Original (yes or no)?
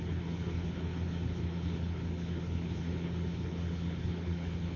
no